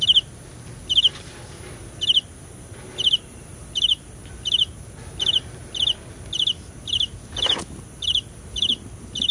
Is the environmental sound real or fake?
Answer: real